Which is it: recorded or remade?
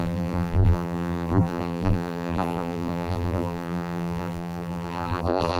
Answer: remade